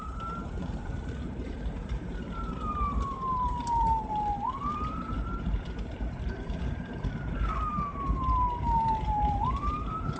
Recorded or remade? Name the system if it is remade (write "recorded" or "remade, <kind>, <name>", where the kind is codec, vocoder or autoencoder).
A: remade, vocoder, BigVGAN v2